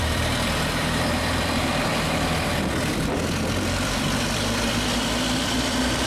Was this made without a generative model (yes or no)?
no